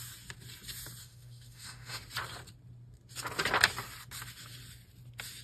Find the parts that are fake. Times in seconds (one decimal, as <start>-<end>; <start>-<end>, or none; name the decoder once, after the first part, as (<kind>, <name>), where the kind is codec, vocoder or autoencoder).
1.0-2.0 (autoencoder, DAC-VAE)